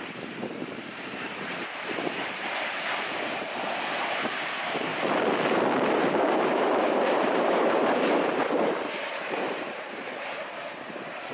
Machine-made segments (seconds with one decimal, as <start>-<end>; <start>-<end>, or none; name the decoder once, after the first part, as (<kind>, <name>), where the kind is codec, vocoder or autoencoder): 0.0-11.3 (vocoder, BigVGAN v2)

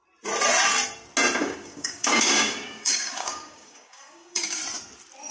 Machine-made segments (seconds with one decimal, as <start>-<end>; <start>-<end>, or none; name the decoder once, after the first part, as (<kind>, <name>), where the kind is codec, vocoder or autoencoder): 1.4-4.6 (codec, DAC)

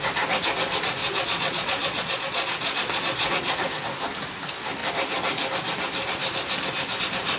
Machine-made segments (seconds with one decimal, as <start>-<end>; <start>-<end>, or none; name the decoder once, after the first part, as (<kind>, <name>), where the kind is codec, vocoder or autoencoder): 1.0-3.7 (vocoder, Vocos)